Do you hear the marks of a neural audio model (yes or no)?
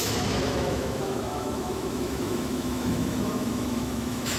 yes